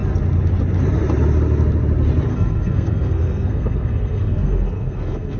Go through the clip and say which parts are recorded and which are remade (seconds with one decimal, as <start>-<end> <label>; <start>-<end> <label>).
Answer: 0.0-2.3 recorded; 2.3-5.4 remade